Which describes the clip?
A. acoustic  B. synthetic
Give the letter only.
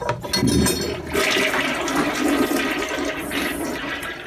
A